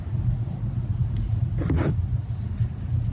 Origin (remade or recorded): recorded